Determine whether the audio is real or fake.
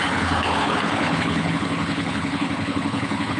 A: fake